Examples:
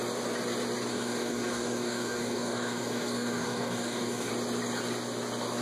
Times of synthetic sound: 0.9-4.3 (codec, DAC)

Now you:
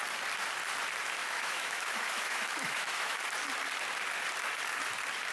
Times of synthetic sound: 1.2-3.2 (autoencoder, DAC-VAE)

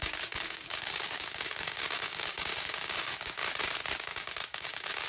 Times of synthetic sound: 0.0-3.4 (codec, DAC); 4.0-5.1